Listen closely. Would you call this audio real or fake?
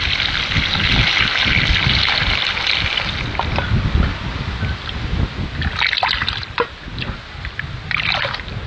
real